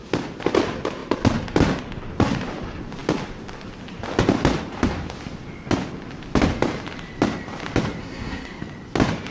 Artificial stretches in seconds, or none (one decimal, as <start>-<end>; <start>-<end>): 8.0-8.6